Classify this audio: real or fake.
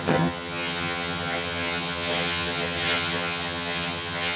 fake